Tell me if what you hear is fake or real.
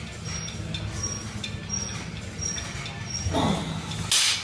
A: real